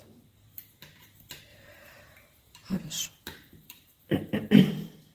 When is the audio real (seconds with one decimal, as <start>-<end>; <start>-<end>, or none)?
none